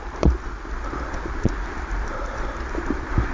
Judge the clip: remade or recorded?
recorded